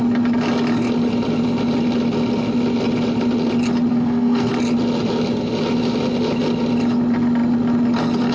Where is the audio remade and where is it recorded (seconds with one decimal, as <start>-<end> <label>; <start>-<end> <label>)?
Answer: 0.0-3.9 recorded; 3.9-4.5 remade; 4.5-8.3 recorded